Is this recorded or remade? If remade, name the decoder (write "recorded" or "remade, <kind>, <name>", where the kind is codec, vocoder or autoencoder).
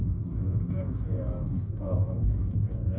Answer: remade, codec, DAC